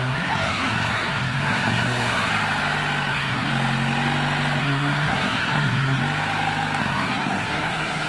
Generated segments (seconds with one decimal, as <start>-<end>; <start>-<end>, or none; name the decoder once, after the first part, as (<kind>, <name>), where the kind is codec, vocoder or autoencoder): 0.0-2.3 (codec, SNAC); 3.1-3.5; 4.6-6.0; 6.8-8.1